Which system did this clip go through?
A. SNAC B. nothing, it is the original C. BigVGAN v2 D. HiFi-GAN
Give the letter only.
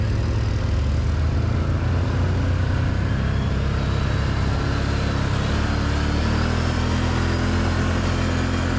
B